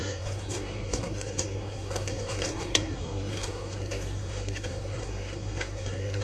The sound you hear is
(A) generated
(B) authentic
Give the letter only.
A